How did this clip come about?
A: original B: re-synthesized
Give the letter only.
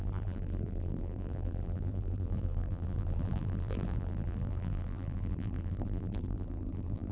B